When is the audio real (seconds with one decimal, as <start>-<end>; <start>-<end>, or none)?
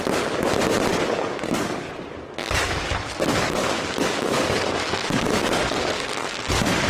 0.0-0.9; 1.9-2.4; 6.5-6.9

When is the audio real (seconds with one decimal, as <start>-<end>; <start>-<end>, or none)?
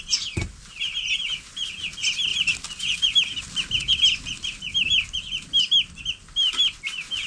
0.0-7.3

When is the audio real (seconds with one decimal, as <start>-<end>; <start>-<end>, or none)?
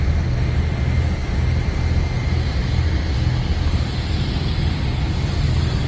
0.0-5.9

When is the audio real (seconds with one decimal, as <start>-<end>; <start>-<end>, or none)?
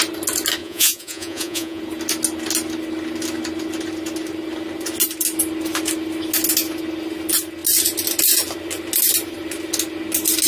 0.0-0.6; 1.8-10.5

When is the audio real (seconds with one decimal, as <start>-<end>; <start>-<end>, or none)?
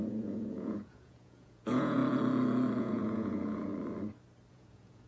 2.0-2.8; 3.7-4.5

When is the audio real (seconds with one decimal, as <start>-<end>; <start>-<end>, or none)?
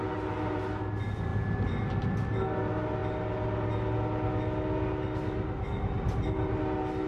0.0-7.1